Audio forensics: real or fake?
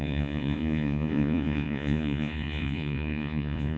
fake